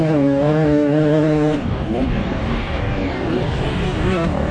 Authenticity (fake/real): fake